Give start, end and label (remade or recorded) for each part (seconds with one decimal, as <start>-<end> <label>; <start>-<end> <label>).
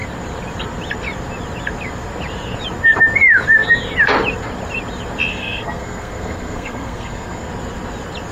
0.0-5.3 recorded; 5.3-7.5 remade; 7.5-8.3 recorded